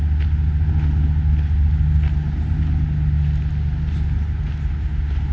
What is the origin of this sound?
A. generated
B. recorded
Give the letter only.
B